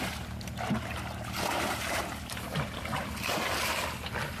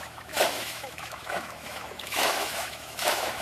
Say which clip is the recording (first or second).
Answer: first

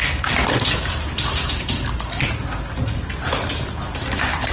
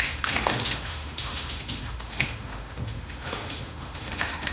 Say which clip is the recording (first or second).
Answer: first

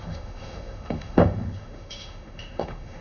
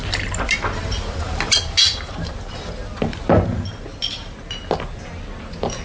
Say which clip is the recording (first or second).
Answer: second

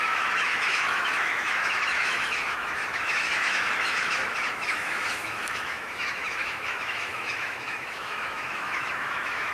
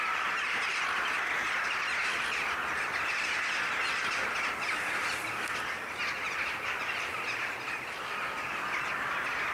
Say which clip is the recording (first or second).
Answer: second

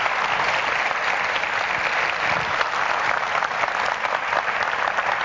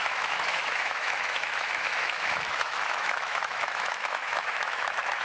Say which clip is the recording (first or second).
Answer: first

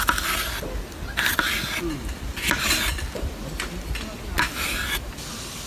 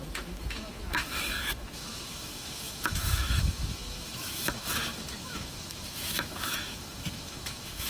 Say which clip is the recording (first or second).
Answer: first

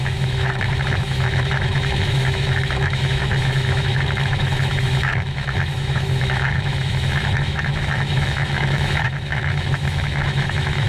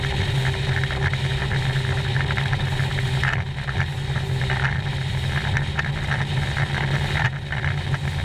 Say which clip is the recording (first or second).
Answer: second